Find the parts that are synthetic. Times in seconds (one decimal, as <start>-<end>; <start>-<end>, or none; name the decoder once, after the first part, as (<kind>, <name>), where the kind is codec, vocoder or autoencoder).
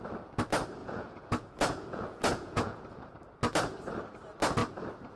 0.8-3.1 (vocoder, Vocos)